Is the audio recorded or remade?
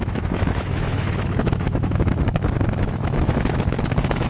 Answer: remade